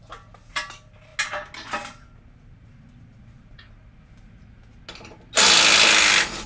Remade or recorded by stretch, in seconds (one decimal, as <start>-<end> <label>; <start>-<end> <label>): 0.0-6.5 recorded